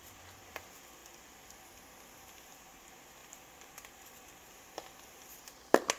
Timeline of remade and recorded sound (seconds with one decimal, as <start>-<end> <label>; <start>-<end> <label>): 0.0-6.0 recorded